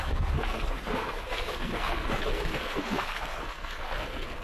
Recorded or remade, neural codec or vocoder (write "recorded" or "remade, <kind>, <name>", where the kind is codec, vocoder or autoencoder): remade, codec, SNAC